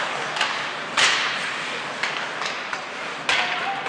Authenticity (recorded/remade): recorded